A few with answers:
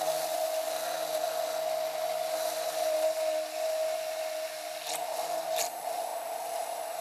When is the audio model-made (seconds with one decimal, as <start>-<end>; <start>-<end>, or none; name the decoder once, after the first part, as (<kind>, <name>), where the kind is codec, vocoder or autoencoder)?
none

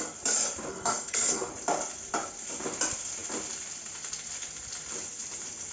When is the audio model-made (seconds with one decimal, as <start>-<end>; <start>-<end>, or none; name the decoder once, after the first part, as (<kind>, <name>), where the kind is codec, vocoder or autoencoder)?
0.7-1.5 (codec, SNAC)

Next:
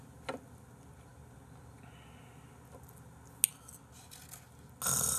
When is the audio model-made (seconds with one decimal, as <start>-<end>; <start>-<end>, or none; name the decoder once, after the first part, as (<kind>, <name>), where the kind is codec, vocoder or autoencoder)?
none

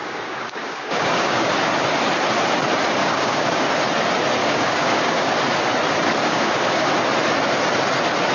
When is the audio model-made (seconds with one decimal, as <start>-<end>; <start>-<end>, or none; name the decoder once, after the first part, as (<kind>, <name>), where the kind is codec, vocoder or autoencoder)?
0.0-1.5 (codec, DAC); 3.0-3.7; 4.4-5.3; 6.2-6.9

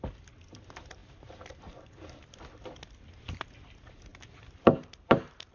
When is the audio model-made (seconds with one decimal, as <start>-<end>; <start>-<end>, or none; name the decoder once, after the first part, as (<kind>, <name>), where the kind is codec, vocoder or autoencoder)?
1.0-2.2 (vocoder, BigVGAN v2); 4.1-5.5

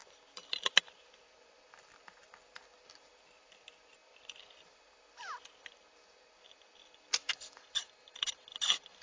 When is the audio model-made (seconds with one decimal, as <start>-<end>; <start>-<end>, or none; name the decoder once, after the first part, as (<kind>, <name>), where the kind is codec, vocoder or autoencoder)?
0.0-3.1 (vocoder, BigVGAN v2)